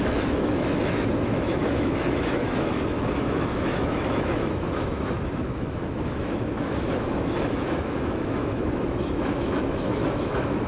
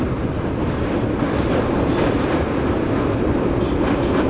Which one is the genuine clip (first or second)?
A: second